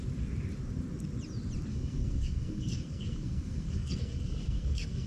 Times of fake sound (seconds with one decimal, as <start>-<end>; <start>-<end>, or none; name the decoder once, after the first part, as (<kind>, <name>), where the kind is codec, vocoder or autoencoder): 1.7-5.1 (codec, SNAC)